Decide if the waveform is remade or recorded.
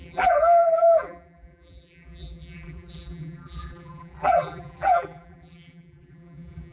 remade